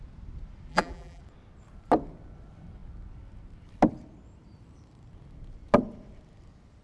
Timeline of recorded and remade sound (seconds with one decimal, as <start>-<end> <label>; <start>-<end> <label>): 0.0-0.7 recorded; 0.7-1.2 remade; 1.2-6.8 recorded